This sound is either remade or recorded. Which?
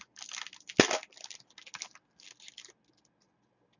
recorded